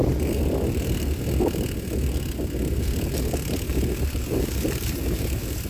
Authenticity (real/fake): real